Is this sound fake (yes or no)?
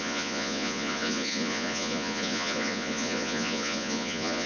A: yes